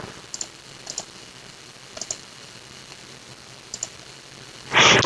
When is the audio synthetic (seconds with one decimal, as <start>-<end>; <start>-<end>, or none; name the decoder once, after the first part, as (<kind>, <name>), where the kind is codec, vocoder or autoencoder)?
none